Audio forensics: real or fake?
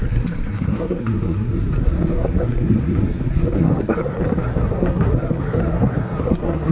fake